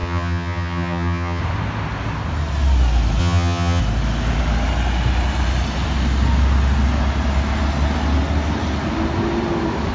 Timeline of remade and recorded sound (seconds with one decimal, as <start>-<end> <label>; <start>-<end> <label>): 0.0-1.4 remade; 1.4-3.2 recorded; 3.2-3.8 remade; 3.8-9.9 recorded